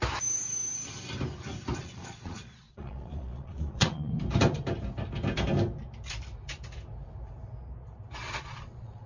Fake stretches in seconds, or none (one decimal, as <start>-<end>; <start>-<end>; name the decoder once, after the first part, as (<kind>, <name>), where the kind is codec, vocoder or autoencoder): 1.8-4.1 (vocoder, Vocos); 8.2-9.1